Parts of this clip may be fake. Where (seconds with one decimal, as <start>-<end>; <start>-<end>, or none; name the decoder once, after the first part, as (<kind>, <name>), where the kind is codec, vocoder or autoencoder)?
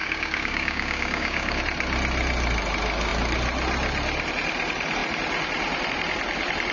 0.0-1.6 (codec, DAC)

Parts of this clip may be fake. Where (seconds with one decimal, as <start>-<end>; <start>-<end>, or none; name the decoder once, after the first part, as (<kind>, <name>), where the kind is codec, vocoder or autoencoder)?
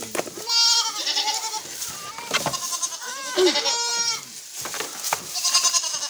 none